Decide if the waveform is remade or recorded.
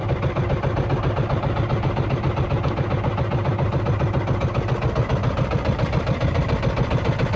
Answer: recorded